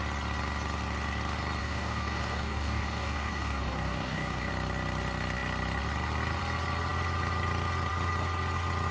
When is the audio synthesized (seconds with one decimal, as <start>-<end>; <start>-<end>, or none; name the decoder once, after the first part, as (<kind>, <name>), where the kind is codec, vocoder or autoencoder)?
1.6-4.5 (codec, DAC)